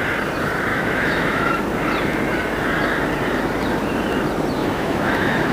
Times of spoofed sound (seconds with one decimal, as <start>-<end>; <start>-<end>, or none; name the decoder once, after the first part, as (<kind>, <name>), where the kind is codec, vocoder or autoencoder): 0.7-1.6 (autoencoder, DAC-VAE); 4.6-5.5